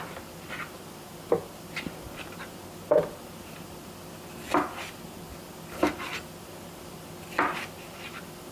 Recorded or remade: recorded